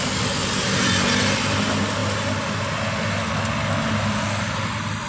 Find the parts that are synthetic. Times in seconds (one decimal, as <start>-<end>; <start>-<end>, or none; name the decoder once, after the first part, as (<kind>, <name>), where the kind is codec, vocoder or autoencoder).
none

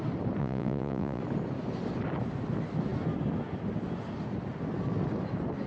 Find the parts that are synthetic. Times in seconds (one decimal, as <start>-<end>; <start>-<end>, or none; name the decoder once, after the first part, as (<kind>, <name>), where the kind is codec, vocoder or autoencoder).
0.4-1.2 (vocoder, Vocos)

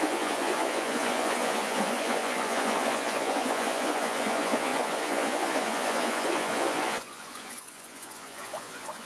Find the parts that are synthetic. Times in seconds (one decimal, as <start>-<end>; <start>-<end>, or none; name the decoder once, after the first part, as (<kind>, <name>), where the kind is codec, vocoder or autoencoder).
0.0-9.1 (vocoder, Vocos)

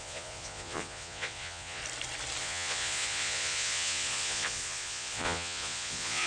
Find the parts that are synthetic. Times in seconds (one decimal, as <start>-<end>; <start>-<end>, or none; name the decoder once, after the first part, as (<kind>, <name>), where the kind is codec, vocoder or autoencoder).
0.0-1.8 (vocoder, Vocos); 2.4-6.3